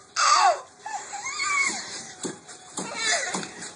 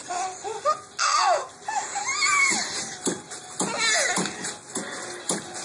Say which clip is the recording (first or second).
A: second